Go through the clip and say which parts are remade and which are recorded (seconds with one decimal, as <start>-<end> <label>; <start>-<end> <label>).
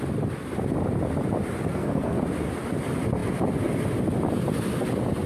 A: 0.0-1.7 recorded; 1.7-2.2 remade; 2.2-5.3 recorded